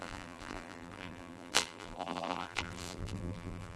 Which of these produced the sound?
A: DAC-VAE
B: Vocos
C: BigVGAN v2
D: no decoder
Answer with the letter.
C